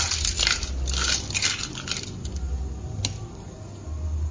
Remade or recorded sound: recorded